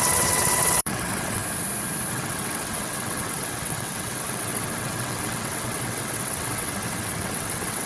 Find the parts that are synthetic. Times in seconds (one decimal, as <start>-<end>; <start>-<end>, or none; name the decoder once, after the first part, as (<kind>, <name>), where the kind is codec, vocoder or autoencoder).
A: 0.0-1.4 (vocoder, WaveNeXt); 2.1-7.9